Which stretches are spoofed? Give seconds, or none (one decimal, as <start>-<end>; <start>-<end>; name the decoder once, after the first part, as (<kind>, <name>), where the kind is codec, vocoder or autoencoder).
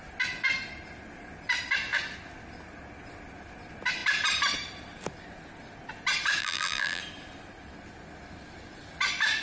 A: 6.4-7.0 (vocoder, BigVGAN v2)